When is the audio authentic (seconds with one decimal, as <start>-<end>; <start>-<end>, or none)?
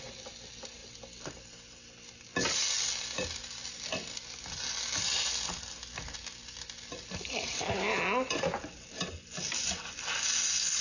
0.0-10.8